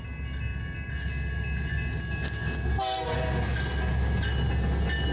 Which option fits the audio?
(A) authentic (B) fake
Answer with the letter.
A